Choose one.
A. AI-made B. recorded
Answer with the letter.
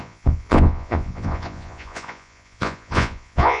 A